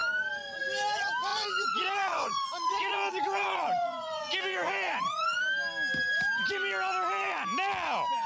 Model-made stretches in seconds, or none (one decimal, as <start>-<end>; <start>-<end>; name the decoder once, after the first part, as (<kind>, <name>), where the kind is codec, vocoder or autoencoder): 1.3-5.4 (vocoder, Vocos)